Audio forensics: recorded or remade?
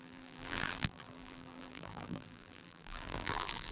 remade